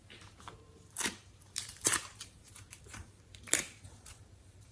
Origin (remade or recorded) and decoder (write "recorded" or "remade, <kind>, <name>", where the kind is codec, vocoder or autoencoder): remade, vocoder, BigVGAN v2